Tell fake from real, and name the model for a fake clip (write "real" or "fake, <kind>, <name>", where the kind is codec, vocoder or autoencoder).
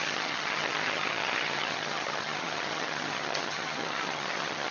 fake, vocoder, HiFi-GAN